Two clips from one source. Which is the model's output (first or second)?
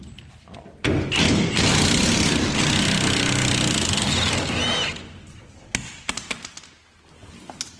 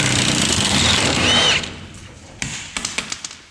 second